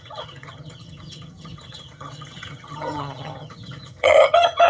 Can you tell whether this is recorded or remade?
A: remade